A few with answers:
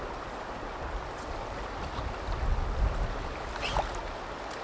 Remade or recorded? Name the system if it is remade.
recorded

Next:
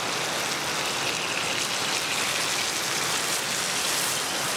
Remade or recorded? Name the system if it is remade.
recorded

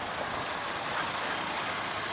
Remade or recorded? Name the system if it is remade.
recorded